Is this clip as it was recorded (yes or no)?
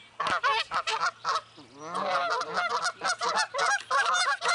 yes